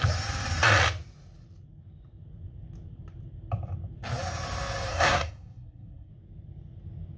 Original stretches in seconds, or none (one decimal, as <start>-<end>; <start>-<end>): 0.0-4.9; 6.1-7.2